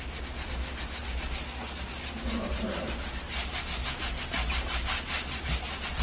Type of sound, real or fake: fake